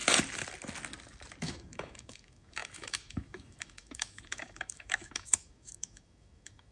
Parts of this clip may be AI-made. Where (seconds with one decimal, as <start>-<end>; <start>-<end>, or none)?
1.4-6.7